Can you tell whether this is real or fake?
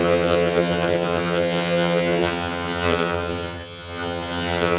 fake